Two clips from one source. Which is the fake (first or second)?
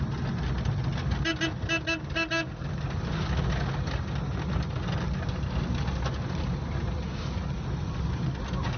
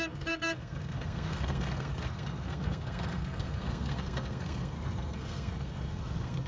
second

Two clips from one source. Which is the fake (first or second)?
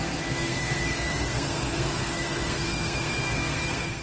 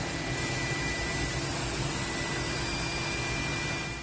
first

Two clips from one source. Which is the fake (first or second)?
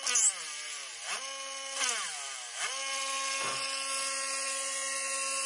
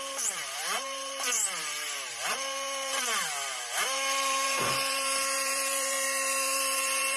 second